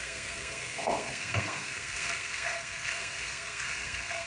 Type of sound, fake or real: fake